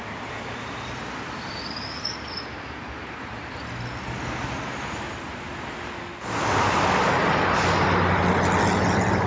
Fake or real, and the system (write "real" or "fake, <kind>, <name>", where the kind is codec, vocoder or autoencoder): real